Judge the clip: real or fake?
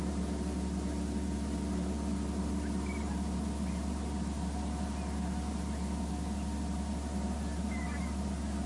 real